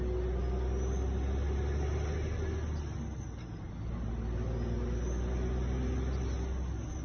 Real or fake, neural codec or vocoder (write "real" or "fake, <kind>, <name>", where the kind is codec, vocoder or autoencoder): real